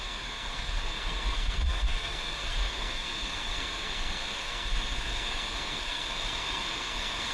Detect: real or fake fake